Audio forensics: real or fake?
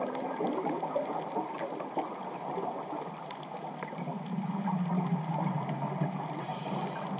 real